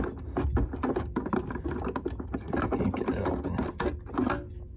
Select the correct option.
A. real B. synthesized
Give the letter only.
A